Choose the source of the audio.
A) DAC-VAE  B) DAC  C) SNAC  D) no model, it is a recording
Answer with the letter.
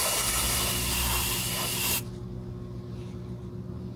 D